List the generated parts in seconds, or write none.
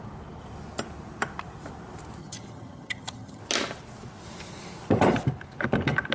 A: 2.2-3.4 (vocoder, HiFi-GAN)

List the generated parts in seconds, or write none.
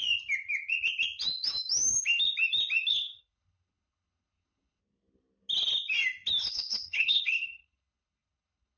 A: 2.9-4.8 (codec, HILCodec); 6.4-8.8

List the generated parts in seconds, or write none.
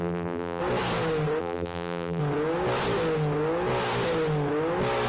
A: 0.0-0.6 (vocoder, BigVGAN v2); 1.4-2.2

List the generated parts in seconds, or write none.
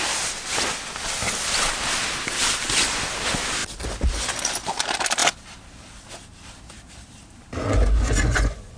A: 7.6-8.8 (vocoder, Vocos)